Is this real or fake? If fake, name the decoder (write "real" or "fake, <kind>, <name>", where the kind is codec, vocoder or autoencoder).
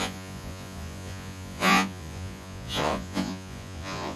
fake, vocoder, Vocos